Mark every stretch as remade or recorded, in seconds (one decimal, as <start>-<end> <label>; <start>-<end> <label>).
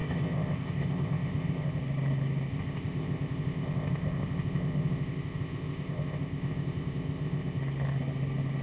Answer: 0.0-1.8 remade; 1.8-2.5 recorded; 2.5-7.6 remade; 7.6-8.6 recorded